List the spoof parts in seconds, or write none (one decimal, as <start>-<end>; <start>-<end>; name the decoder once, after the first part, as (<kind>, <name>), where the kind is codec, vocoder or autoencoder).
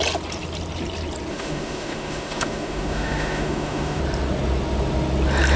1.3-4.0 (autoencoder, DAC-VAE)